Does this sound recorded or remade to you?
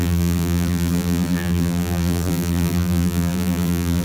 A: remade